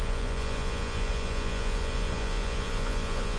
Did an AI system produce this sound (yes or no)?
yes